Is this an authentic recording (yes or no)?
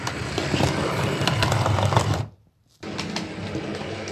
yes